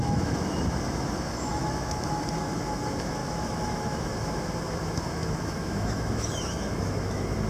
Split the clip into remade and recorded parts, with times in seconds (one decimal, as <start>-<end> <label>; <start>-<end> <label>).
0.0-7.5 remade